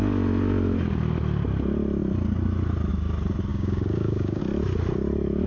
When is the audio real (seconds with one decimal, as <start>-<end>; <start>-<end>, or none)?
0.0-3.5; 4.4-5.5